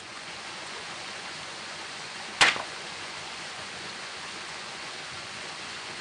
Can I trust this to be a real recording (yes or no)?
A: no